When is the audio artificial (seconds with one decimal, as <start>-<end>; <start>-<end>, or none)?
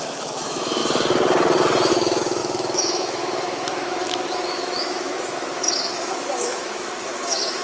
0.0-0.8; 1.9-7.6